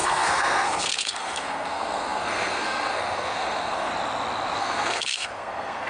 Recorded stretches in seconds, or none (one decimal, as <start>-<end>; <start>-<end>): 3.9-4.6